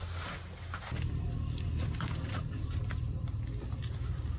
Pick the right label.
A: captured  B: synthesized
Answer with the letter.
A